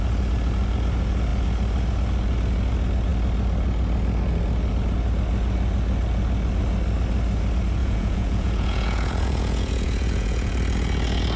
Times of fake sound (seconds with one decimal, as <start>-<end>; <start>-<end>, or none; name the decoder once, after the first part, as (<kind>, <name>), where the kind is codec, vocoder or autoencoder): 7.8-10.5 (vocoder, Vocos)